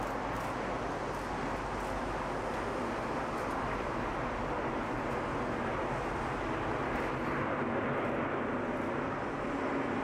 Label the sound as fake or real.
real